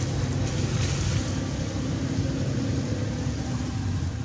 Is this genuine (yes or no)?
yes